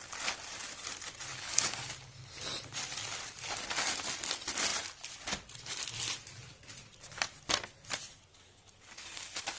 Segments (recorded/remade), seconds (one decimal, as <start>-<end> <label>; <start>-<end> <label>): 0.0-1.3 recorded; 1.3-1.9 remade; 1.9-8.3 recorded; 8.3-9.6 remade